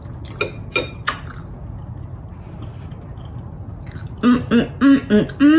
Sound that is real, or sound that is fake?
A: real